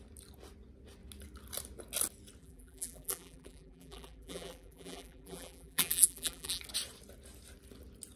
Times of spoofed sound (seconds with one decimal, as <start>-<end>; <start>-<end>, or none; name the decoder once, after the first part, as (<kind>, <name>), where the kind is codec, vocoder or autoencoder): 2.4-6.6 (vocoder, BigVGAN v2)